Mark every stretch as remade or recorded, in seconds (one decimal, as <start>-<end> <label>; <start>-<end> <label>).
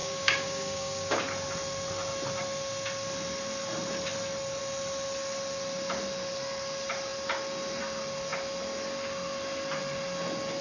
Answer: 0.0-1.2 remade; 1.2-10.6 recorded